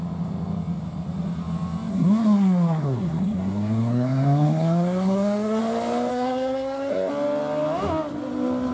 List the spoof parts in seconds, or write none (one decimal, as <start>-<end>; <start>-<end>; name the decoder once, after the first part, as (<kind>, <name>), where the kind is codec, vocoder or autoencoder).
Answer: 1.9-5.6 (codec, SNAC); 6.1-7.1